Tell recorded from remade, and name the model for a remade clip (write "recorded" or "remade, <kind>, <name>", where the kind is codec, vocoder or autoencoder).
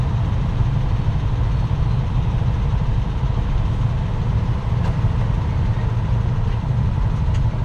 recorded